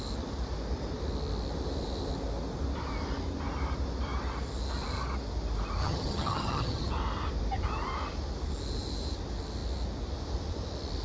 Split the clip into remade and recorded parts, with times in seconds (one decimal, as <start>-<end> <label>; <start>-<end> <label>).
0.0-5.8 recorded; 5.8-6.9 remade; 6.9-11.0 recorded